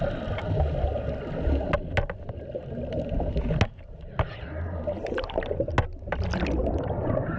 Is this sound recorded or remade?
recorded